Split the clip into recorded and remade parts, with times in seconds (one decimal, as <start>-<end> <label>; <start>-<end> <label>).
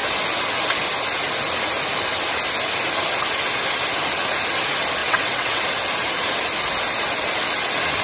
0.0-5.0 recorded; 5.0-5.6 remade; 5.6-8.0 recorded